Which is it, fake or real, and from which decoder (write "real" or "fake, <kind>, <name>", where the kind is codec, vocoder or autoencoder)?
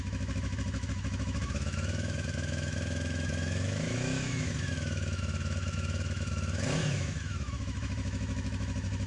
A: fake, autoencoder, DAC-VAE